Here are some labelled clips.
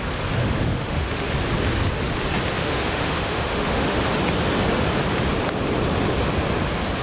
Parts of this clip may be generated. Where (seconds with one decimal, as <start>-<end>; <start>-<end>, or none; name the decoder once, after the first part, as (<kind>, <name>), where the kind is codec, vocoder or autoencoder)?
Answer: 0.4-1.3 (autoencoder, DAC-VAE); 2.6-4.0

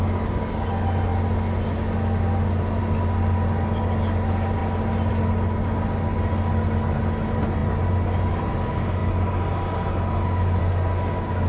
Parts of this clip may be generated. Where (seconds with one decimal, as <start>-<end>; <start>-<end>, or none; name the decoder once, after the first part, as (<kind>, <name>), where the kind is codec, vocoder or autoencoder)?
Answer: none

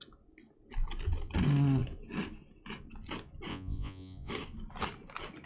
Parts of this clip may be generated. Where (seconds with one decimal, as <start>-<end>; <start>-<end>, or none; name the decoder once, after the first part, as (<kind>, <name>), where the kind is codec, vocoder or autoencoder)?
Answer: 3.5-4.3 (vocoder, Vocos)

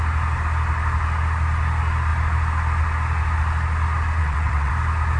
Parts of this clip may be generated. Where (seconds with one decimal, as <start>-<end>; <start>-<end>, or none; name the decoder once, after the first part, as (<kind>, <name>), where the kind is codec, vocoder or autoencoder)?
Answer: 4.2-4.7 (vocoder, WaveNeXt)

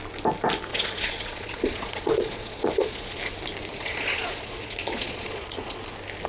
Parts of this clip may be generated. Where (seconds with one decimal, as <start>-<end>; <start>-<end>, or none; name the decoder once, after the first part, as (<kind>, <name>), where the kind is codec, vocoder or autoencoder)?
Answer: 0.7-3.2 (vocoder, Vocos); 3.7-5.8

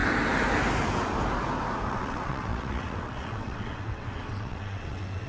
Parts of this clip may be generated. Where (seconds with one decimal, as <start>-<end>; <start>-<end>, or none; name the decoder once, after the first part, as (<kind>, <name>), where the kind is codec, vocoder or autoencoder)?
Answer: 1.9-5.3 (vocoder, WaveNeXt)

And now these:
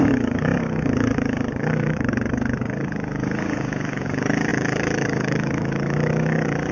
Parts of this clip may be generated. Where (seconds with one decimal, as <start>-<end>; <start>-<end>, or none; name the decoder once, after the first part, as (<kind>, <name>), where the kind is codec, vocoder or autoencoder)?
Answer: 0.0-6.7 (codec, DAC)